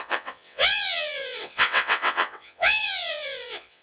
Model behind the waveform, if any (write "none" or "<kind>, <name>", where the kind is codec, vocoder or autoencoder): vocoder, WaveNeXt